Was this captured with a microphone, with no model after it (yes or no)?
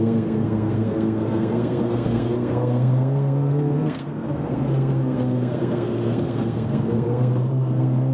no